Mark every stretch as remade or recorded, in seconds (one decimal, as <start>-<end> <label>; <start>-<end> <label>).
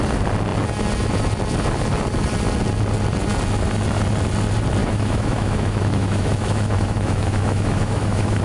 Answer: 0.0-4.8 recorded; 4.8-8.4 remade